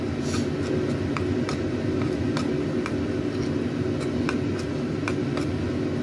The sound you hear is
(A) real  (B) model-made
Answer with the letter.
A